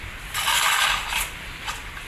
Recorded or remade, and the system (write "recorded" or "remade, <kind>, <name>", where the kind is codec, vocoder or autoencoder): recorded